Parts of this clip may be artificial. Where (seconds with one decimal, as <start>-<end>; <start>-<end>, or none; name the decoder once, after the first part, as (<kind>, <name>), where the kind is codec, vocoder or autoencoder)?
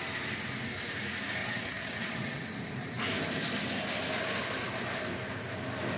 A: 1.4-2.4 (vocoder, WaveNeXt)